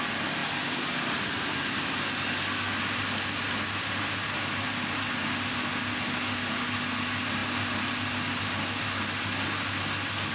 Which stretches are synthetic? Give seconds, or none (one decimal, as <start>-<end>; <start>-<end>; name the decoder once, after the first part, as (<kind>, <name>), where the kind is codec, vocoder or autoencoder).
none